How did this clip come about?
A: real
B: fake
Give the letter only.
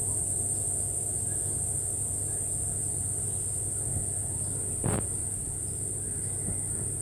A